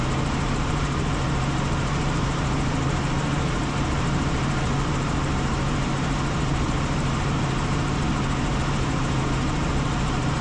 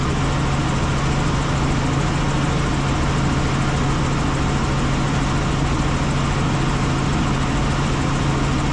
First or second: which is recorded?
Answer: second